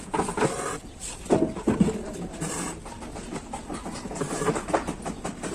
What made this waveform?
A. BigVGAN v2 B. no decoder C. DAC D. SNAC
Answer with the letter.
B